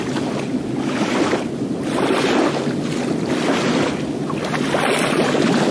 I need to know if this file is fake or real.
real